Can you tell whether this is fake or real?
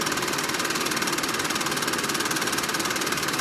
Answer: real